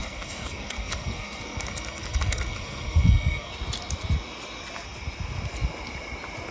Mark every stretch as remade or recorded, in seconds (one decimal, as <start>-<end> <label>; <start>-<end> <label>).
0.0-3.5 remade; 3.5-6.5 recorded

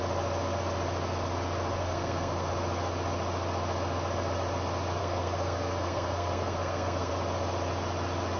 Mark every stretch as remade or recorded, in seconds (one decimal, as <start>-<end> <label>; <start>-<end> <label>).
0.0-1.8 recorded; 1.8-2.5 remade; 2.5-5.0 recorded; 5.0-7.1 remade; 7.1-8.4 recorded

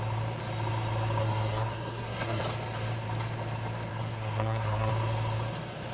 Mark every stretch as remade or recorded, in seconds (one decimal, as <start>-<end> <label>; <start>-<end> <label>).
0.0-1.2 recorded; 1.2-2.4 remade; 2.4-3.9 recorded; 3.9-4.9 remade; 4.9-5.9 recorded

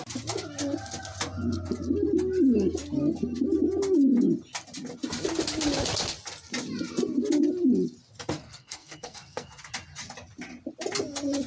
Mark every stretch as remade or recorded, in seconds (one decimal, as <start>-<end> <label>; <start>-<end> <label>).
0.0-8.4 recorded; 8.4-9.5 remade; 9.5-11.5 recorded

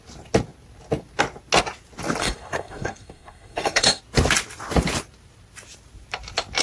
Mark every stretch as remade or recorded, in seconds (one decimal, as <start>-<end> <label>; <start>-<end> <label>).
0.0-2.2 recorded; 2.2-4.0 remade; 4.0-6.6 recorded

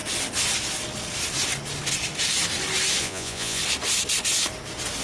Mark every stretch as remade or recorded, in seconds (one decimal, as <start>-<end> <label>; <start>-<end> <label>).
0.0-3.0 recorded; 3.0-3.6 remade; 3.6-5.0 recorded

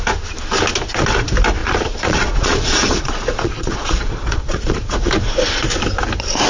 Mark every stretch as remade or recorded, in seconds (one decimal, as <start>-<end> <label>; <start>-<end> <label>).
0.0-1.6 recorded; 1.6-5.1 remade; 5.1-6.5 recorded

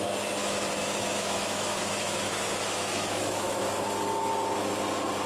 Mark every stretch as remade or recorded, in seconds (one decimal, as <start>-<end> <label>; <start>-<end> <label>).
0.0-0.4 recorded; 0.4-3.6 remade; 3.6-5.3 recorded